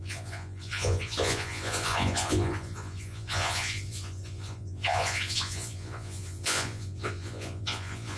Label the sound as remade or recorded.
remade